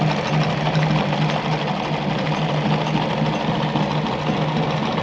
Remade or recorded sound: recorded